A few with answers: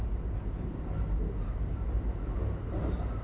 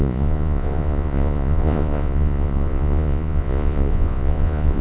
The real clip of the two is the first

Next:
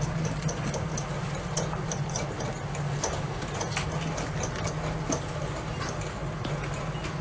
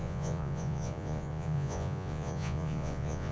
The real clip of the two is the first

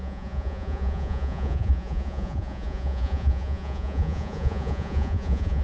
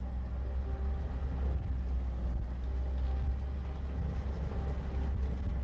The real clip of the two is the second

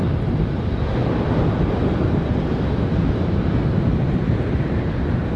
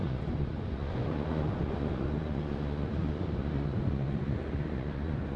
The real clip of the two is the first